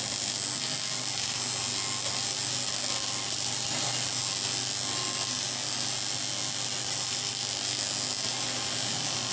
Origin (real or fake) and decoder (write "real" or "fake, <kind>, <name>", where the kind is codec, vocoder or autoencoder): real